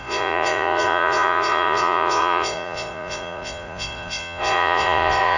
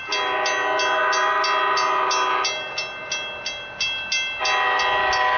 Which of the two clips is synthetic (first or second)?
first